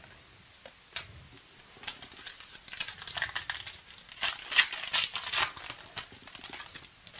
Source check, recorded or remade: recorded